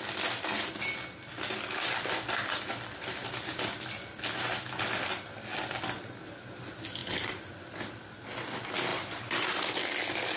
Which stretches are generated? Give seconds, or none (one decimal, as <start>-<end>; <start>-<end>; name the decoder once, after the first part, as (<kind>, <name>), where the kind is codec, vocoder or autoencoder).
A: 8.9-9.8 (vocoder, BigVGAN v2)